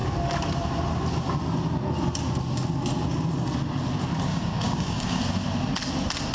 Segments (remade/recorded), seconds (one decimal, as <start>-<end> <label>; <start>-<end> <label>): 0.0-4.3 recorded; 4.3-5.2 remade; 5.2-6.3 recorded